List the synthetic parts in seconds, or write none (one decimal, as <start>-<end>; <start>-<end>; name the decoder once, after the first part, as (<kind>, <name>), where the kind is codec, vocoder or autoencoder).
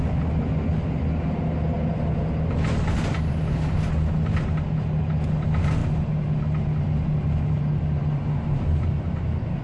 none